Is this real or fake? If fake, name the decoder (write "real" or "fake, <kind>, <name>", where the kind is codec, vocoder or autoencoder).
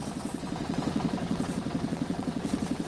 fake, vocoder, WaveNeXt